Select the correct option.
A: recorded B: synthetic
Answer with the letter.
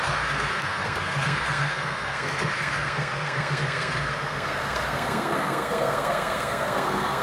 B